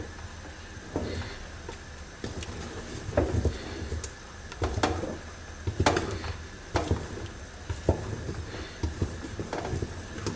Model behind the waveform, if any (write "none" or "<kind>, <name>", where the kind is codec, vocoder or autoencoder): none